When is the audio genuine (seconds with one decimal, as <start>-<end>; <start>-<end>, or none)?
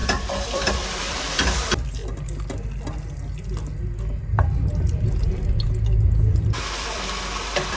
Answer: 2.0-6.7